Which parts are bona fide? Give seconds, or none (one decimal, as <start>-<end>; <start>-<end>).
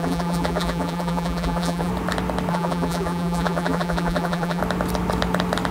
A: 1.9-2.5; 4.6-5.7